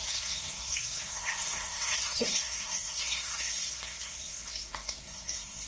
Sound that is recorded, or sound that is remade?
remade